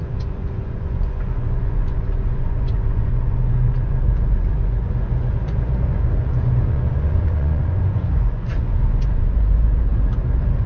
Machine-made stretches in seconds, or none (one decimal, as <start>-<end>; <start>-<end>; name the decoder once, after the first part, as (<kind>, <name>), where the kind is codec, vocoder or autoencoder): 0.0-10.7 (vocoder, Vocos)